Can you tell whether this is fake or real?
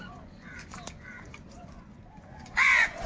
fake